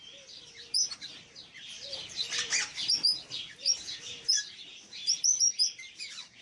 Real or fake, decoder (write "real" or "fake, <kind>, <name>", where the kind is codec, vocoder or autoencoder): fake, vocoder, BigVGAN v2